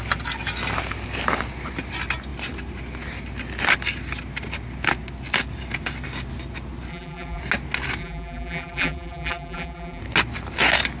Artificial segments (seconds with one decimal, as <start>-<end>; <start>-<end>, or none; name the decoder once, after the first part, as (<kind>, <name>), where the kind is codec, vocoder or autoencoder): 6.9-7.4 (vocoder, BigVGAN v2); 8.0-10.0